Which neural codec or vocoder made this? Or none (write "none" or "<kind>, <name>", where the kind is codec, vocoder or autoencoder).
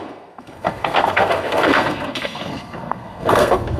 codec, SNAC